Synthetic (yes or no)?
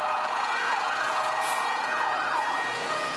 yes